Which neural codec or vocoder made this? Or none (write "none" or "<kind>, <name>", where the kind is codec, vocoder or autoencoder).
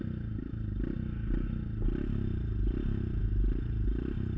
none